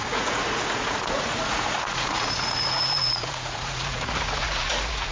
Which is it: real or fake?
fake